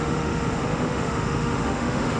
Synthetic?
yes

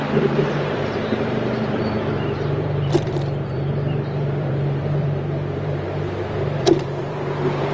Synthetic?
yes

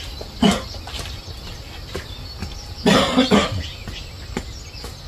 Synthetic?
no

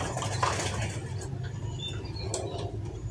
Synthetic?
yes